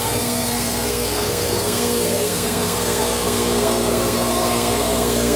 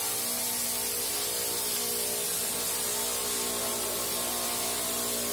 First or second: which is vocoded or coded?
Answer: first